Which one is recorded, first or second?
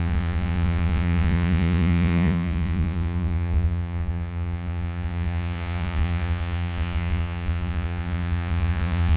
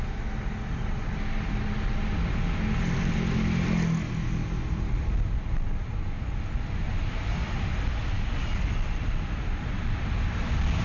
second